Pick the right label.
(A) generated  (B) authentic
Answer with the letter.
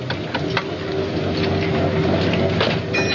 B